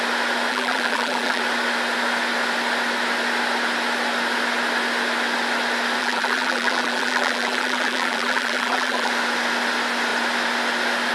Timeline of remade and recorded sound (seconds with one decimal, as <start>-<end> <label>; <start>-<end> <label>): 0.0-0.5 recorded; 0.5-1.4 remade; 1.4-6.0 recorded; 6.0-9.1 remade; 9.1-11.1 recorded